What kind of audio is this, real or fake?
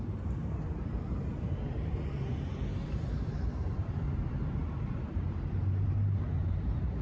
fake